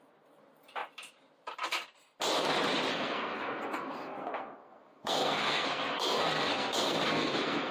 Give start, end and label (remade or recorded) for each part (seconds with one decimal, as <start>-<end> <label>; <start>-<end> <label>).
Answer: 0.0-2.9 recorded; 2.9-7.7 remade